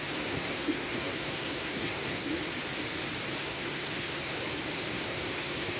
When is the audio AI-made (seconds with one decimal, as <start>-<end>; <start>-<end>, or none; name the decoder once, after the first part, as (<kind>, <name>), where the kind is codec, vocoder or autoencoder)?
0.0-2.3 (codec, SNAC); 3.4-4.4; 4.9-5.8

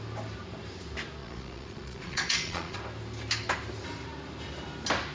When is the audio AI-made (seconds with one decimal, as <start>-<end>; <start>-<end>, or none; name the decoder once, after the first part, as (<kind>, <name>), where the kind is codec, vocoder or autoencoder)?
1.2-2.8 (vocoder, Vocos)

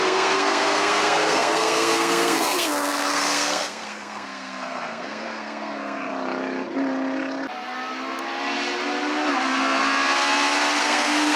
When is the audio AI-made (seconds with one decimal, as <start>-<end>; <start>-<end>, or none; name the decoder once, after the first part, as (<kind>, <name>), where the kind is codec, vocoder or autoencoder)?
0.0-6.1 (codec, SNAC); 10.8-11.4

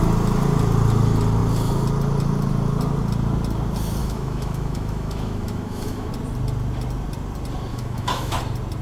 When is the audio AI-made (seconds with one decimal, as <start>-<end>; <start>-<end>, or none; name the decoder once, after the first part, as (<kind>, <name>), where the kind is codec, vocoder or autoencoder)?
4.0-6.1 (autoencoder, DAC-VAE); 7.7-8.4

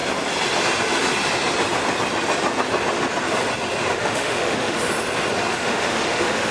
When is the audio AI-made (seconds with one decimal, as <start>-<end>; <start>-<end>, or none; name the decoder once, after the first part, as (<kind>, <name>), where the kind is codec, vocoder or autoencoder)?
3.9-4.9 (autoencoder, DAC-VAE); 5.5-6.5